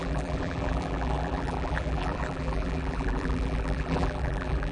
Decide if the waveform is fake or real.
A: fake